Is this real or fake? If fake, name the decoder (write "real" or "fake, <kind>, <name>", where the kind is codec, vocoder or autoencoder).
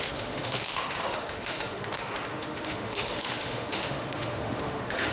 fake, autoencoder, DAC-VAE